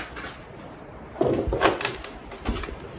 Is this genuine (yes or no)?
no